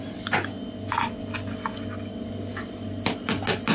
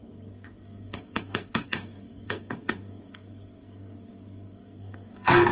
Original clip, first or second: first